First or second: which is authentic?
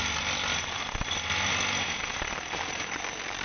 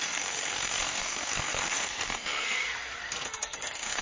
first